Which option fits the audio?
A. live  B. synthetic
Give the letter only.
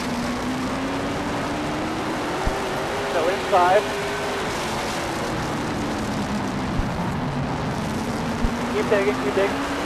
A